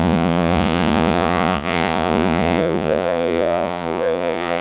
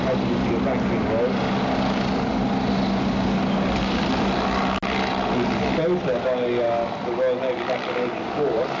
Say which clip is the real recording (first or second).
second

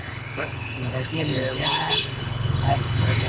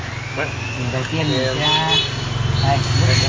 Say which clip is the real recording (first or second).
second